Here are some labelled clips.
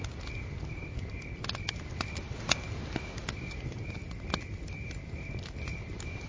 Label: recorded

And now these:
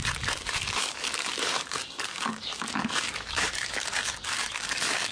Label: remade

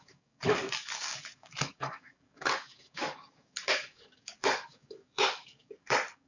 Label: remade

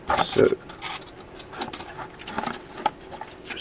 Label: recorded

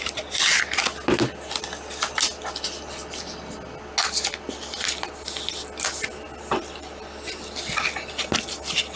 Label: recorded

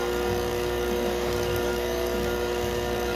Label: remade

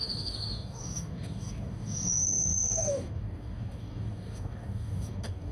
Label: remade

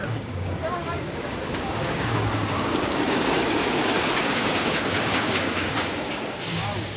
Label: remade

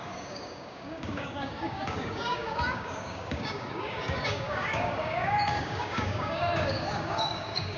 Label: remade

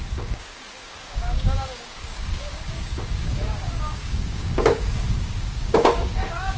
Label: remade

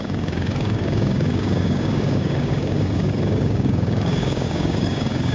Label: remade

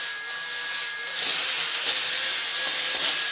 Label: recorded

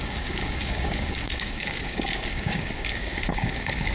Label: remade